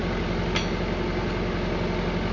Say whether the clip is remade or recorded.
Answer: recorded